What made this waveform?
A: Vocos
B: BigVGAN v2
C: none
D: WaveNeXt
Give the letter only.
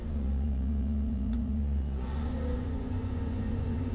A